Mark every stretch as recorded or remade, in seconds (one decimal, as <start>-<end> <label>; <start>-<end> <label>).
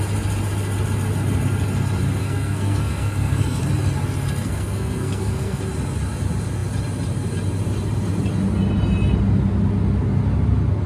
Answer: 0.0-2.2 recorded; 2.2-3.6 remade; 3.6-4.4 recorded; 4.4-5.6 remade; 5.6-10.9 recorded